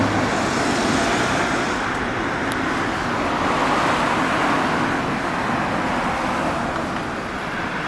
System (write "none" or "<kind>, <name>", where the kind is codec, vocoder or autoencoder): none